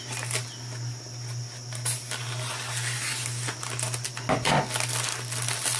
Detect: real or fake real